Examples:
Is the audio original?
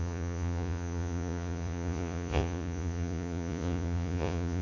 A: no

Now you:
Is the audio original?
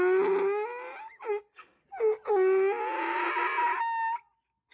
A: yes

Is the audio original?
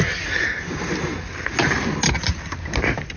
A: yes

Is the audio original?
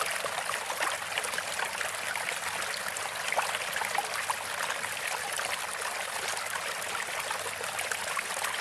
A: yes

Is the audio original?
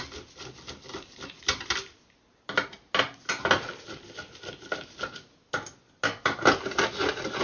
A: yes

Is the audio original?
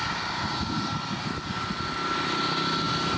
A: yes